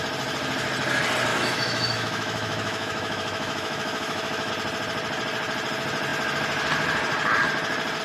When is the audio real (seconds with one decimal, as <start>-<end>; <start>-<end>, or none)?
0.0-1.3; 4.5-8.0